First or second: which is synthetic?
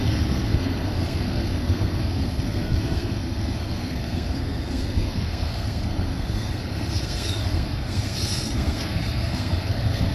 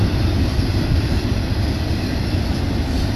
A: first